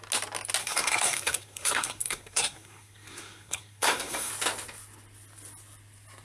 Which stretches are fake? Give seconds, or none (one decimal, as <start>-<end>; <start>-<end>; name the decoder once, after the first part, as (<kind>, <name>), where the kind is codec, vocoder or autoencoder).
0.6-4.3 (codec, SNAC)